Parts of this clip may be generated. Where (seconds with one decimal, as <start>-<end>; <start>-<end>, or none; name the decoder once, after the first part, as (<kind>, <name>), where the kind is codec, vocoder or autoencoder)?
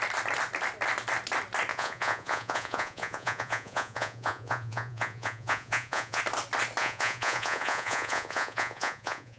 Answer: 1.7-6.2 (vocoder, Vocos); 6.8-9.4